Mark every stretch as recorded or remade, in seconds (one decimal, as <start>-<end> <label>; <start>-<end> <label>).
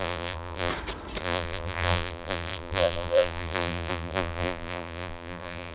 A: 0.0-0.7 remade; 0.7-1.2 recorded; 1.2-5.7 remade